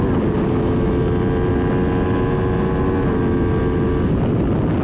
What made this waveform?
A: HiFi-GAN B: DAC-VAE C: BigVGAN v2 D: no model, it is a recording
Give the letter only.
D